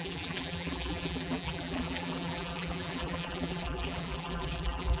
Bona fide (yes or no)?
no